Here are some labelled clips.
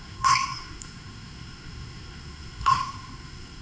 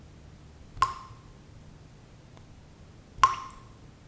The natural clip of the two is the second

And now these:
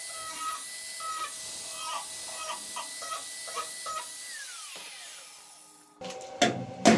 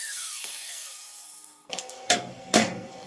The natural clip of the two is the first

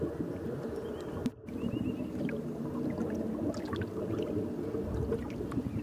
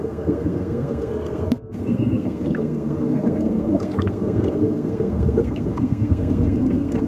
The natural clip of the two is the first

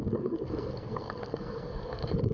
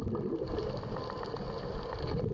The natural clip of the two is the second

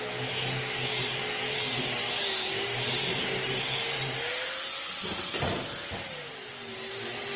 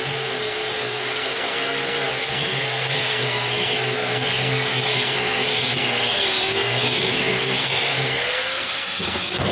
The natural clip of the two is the first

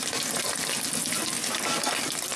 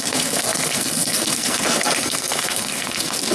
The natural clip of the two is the first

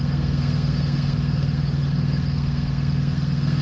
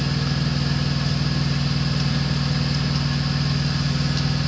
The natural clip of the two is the second